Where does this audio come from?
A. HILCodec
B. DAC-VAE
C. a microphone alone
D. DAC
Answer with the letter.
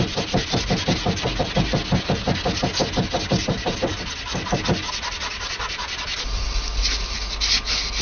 C